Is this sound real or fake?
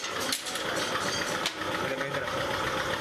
fake